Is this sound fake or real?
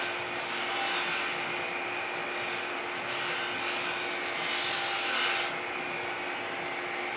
real